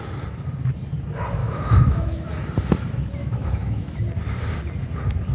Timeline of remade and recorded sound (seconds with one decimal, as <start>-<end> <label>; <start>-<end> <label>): 0.0-1.4 recorded; 1.4-2.3 remade; 2.3-3.2 recorded; 3.2-4.0 remade; 4.0-5.3 recorded